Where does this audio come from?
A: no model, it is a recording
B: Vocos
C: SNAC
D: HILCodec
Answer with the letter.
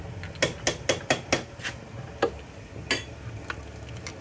A